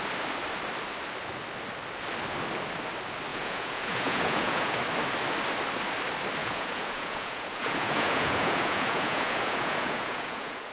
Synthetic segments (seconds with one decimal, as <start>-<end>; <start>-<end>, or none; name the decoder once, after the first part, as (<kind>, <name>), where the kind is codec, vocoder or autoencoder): 3.3-4.8 (vocoder, Vocos); 6.4-10.7